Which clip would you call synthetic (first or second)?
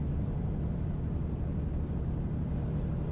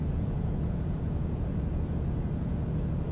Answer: second